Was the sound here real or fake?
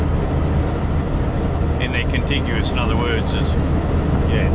real